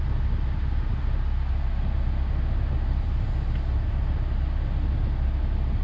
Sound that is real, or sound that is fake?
real